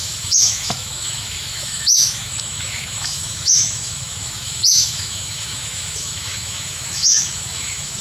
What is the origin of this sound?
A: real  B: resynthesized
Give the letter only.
B